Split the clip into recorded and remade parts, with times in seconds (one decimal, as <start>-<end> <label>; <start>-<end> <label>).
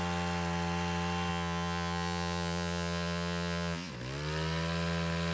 0.0-1.3 recorded; 1.3-3.9 remade; 3.9-5.3 recorded